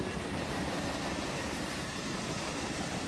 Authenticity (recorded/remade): recorded